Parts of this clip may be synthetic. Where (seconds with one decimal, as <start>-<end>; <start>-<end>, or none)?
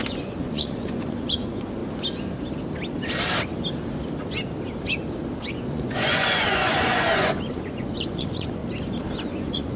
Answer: 0.0-1.8; 5.5-8.6; 9.3-9.8